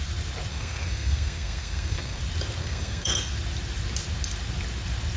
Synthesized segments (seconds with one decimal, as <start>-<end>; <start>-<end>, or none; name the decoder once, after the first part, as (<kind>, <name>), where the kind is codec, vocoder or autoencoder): 0.5-2.2 (codec, SNAC); 2.6-3.3